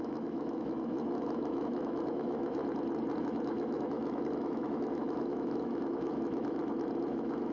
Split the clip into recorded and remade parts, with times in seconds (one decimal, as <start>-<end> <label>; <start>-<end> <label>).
0.0-2.6 remade; 2.6-3.2 recorded; 3.2-6.6 remade; 6.6-7.1 recorded; 7.1-7.5 remade